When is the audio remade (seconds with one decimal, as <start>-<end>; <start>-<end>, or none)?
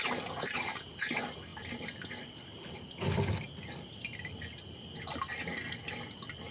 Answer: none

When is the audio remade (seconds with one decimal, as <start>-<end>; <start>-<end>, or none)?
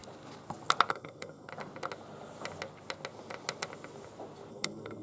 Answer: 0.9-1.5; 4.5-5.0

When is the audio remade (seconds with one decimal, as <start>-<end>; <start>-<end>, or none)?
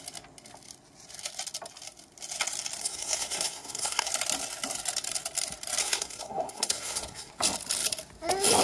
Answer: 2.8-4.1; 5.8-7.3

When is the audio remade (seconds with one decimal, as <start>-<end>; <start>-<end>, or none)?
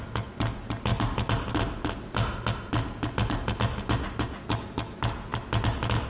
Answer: none